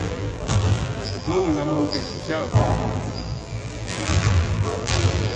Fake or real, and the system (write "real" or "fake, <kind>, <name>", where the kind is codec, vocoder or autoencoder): fake, vocoder, BigVGAN v2